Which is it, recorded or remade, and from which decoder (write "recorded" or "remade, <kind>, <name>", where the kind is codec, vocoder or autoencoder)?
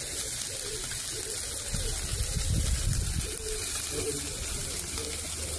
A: recorded